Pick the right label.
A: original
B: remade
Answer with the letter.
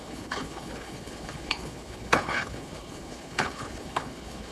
B